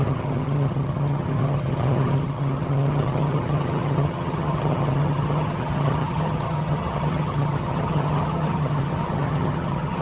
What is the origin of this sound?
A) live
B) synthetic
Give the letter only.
B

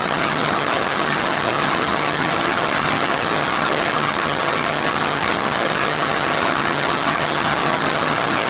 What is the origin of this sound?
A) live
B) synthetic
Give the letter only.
B